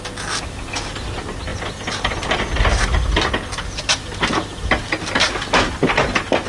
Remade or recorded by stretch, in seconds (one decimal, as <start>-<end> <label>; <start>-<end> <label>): 0.0-6.5 recorded